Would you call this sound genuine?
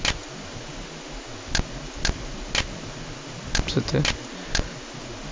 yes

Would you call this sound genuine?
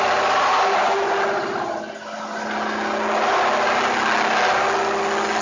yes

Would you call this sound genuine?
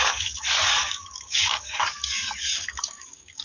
no